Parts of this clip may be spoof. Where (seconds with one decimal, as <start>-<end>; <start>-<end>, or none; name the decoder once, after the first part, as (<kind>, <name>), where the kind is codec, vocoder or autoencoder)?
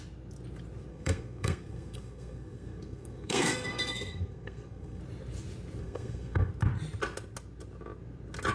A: 0.9-5.0 (codec, SNAC); 5.8-6.5